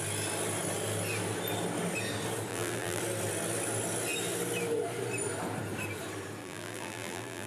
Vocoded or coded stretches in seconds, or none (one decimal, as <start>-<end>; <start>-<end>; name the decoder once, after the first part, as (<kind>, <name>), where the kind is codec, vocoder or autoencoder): 2.5-3.0 (vocoder, BigVGAN v2); 6.4-7.5